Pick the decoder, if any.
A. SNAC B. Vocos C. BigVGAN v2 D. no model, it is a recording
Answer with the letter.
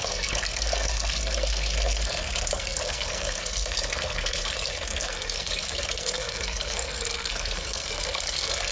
A